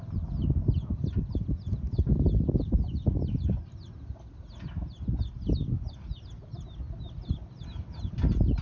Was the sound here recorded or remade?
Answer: recorded